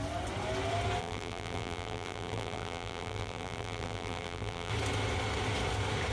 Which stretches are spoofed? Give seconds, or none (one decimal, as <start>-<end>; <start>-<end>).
1.0-4.7